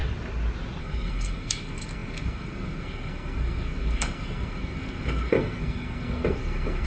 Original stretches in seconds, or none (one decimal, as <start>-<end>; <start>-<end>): 0.0-0.8